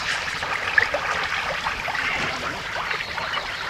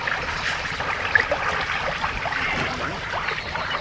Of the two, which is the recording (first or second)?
second